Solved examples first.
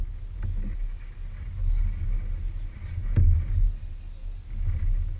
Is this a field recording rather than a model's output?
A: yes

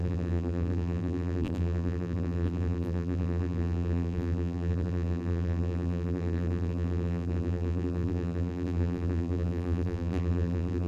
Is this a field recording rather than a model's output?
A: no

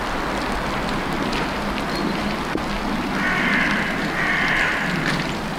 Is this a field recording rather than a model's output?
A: yes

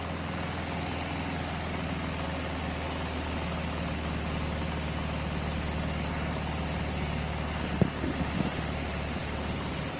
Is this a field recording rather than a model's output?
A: yes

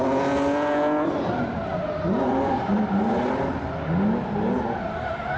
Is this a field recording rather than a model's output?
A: yes